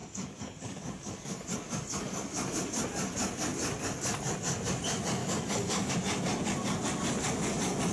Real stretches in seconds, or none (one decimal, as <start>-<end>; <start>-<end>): 2.5-5.2; 5.9-7.9